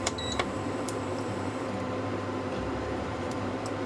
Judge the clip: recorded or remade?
remade